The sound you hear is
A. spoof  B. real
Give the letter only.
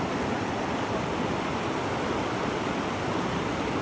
A